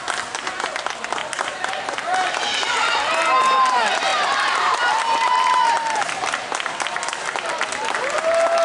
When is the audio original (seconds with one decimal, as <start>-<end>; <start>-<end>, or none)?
0.0-1.2; 2.3-4.1; 5.7-8.6